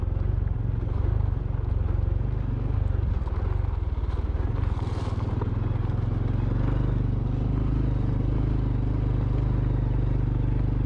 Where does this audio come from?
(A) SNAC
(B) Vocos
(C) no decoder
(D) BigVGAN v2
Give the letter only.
C